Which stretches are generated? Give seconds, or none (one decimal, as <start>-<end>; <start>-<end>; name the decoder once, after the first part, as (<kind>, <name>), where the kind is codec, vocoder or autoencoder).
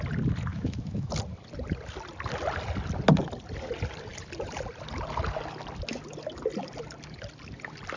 0.5-1.1 (autoencoder, DAC-VAE)